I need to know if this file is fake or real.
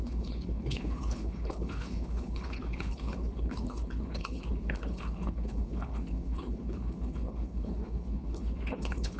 fake